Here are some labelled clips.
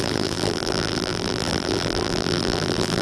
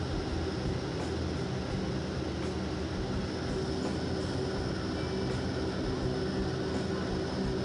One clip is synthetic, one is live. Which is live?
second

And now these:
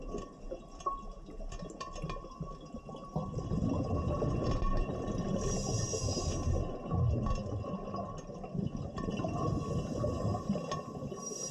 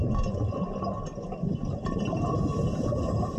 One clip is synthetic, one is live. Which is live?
first